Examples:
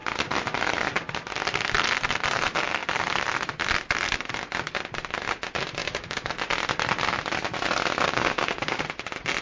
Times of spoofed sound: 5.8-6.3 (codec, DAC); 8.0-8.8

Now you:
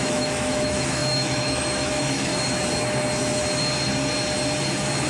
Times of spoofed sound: 0.0-2.3 (autoencoder, DAC-VAE)